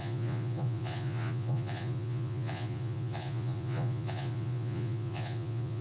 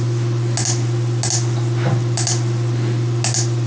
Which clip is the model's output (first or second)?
first